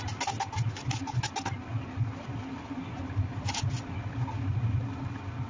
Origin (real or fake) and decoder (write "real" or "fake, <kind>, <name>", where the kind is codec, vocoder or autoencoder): real